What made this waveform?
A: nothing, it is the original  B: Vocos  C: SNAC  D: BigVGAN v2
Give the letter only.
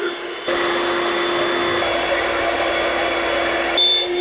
A